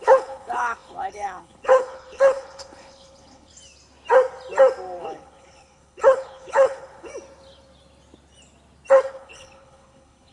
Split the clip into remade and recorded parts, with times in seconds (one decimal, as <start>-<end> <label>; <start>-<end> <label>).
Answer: 0.0-3.5 remade; 3.5-5.0 recorded; 5.0-7.1 remade; 7.1-9.1 recorded; 9.1-10.3 remade